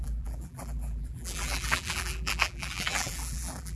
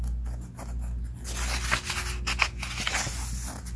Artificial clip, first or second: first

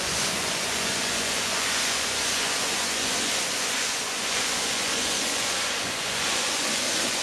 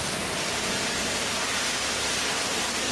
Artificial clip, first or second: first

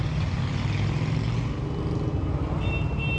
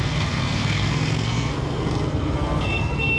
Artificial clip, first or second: second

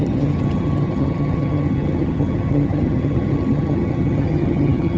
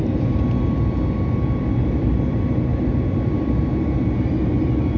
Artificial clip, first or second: first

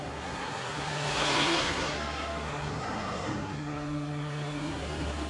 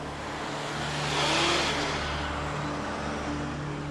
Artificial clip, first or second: first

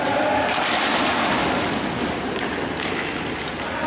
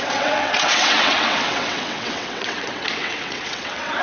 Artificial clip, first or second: second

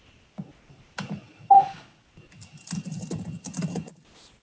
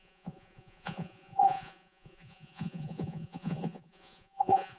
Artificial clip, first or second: second